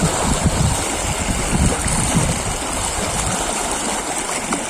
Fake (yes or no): no